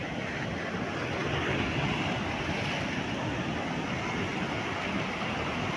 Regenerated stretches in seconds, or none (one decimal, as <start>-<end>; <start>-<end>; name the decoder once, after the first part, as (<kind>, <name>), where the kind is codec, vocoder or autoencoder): none